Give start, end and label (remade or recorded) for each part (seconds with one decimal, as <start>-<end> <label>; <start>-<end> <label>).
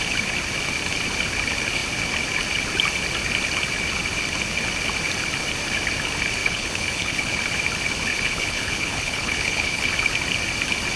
0.0-6.4 recorded; 6.4-7.4 remade; 7.4-8.1 recorded; 8.1-9.9 remade; 9.9-11.0 recorded